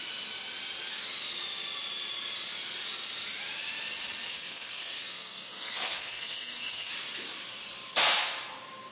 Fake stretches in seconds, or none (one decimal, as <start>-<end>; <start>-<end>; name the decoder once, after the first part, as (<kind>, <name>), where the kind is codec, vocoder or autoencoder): 4.3-6.9 (codec, SNAC)